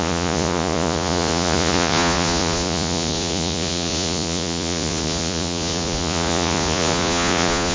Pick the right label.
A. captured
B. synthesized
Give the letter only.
B